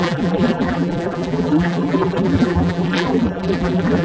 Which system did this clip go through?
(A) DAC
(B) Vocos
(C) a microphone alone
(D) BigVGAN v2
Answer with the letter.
D